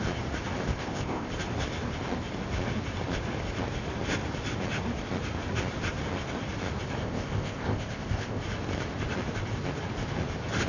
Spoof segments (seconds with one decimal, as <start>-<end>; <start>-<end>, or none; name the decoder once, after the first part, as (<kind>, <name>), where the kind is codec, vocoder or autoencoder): 0.7-1.3 (codec, ZipCodec); 7.0-8.4